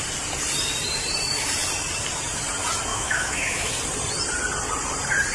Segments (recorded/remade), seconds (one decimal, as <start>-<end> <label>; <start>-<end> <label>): 0.0-2.9 recorded; 2.9-3.7 remade; 3.7-5.3 recorded